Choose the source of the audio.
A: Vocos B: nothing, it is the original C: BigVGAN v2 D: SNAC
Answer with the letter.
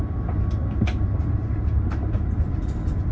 C